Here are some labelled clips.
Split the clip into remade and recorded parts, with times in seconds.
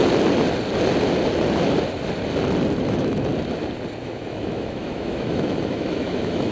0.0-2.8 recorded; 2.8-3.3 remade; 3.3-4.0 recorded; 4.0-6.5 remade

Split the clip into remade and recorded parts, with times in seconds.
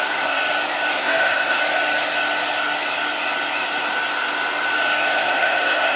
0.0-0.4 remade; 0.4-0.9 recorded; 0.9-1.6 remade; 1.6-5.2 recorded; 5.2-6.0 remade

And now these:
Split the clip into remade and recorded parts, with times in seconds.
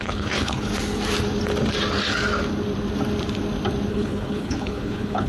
0.0-0.7 remade; 0.7-3.9 recorded; 3.9-5.3 remade